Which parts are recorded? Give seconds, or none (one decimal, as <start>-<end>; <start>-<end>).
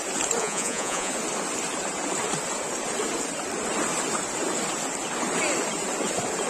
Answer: 0.0-0.4; 1.1-6.5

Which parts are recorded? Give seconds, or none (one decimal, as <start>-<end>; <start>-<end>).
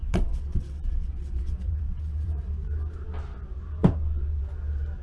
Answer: 2.4-5.0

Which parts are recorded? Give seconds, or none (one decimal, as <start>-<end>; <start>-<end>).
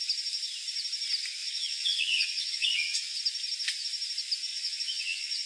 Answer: 0.0-1.4; 3.2-4.5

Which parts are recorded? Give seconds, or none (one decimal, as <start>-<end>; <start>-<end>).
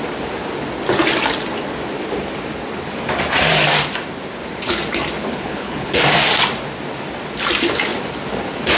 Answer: 0.0-5.3; 6.0-8.8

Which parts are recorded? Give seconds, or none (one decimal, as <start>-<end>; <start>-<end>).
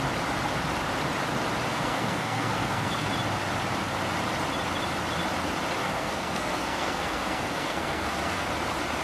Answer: 0.0-1.7; 3.1-5.8; 8.5-9.0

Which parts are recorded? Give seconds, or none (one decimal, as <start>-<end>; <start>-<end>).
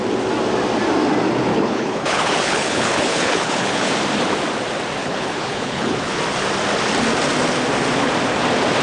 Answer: 0.0-1.5; 3.9-5.0; 6.2-8.8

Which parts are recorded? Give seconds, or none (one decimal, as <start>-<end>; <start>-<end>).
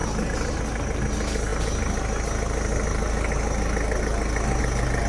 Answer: 0.0-5.1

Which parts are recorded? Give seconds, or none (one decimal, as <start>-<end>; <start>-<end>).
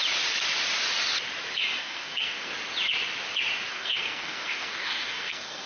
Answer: 0.0-1.8; 2.5-3.7